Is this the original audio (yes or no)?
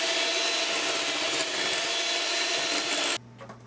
yes